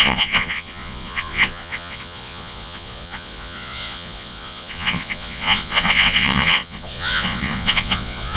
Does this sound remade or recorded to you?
remade